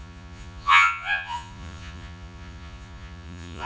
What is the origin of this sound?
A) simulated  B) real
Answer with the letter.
A